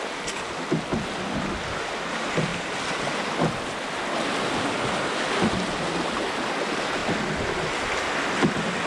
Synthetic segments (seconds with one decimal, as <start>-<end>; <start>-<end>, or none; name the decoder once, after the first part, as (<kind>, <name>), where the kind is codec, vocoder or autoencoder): none